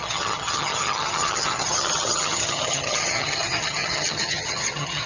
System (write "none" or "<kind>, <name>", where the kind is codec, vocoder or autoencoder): vocoder, HiFi-GAN